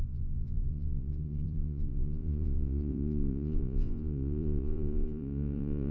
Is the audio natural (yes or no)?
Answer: no